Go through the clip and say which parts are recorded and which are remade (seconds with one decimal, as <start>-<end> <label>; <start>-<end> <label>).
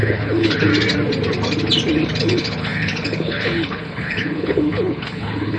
0.0-0.7 remade; 0.7-2.2 recorded; 2.2-5.6 remade